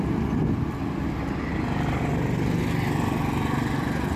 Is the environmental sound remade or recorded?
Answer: recorded